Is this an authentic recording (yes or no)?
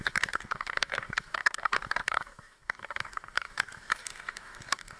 no